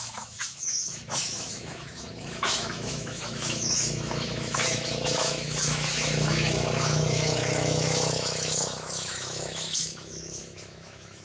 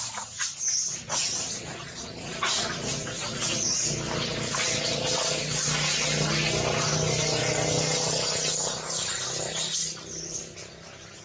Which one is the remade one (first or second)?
first